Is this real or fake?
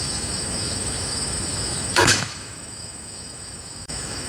fake